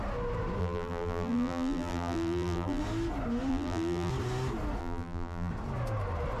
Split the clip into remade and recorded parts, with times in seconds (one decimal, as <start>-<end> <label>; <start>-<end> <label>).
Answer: 0.0-0.6 recorded; 0.6-2.8 remade; 2.8-3.5 recorded; 3.5-4.1 remade; 4.1-4.8 recorded; 4.8-5.5 remade; 5.5-6.4 recorded